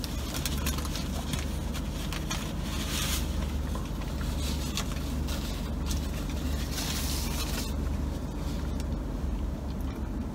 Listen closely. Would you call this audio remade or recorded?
recorded